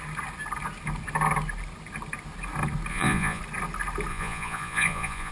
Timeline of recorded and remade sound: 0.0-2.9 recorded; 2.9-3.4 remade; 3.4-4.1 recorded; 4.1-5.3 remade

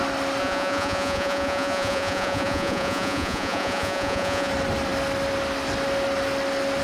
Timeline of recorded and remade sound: 0.0-0.4 recorded; 0.4-4.5 remade; 4.5-6.8 recorded

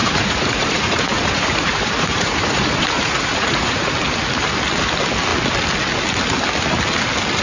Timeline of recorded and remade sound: 0.0-3.9 remade; 3.9-7.4 recorded